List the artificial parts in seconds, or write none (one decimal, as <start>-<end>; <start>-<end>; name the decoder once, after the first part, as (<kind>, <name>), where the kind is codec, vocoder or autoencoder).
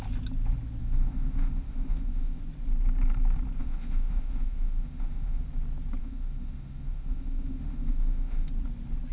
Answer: 0.8-2.4 (autoencoder, DAC-VAE); 3.6-5.4; 6.0-8.5